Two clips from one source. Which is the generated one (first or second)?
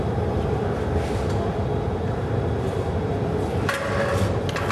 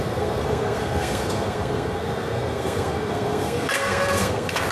second